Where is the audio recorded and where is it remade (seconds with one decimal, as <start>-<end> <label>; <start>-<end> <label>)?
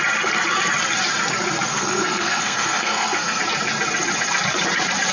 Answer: 0.0-1.7 recorded; 1.7-3.4 remade; 3.4-5.1 recorded